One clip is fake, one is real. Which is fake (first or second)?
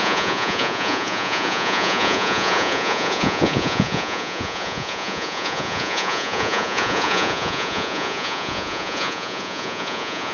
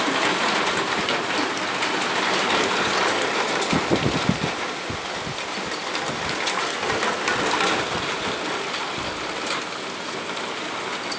first